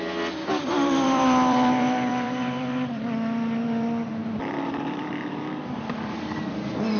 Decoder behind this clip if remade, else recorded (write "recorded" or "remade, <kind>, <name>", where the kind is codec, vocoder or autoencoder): remade, vocoder, BigVGAN v2